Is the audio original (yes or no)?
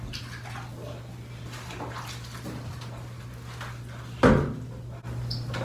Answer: yes